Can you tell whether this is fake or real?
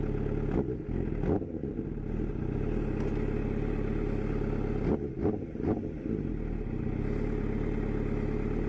real